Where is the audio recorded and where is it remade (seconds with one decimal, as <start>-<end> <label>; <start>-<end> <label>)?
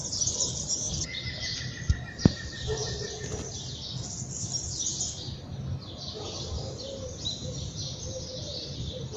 0.0-9.2 recorded